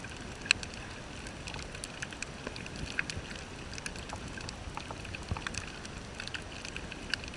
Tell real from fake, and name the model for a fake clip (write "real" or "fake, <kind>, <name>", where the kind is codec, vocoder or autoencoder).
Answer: real